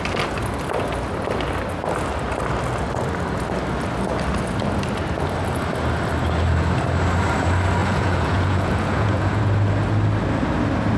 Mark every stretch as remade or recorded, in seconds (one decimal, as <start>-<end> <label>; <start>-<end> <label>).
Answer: 0.0-7.8 recorded; 7.8-9.4 remade; 9.4-11.0 recorded